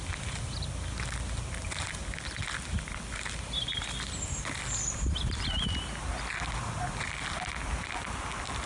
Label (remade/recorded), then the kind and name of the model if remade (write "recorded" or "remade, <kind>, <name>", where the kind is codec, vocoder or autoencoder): recorded